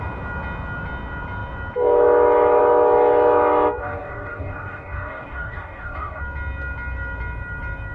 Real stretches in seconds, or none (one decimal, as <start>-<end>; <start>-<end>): 0.0-3.8; 6.2-7.9